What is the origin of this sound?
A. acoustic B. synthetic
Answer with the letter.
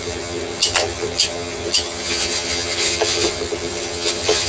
B